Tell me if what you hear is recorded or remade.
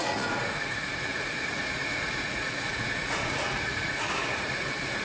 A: remade